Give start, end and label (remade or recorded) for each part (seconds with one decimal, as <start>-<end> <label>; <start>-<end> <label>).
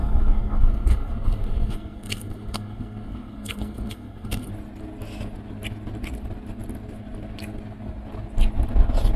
0.0-4.5 remade; 4.5-9.2 recorded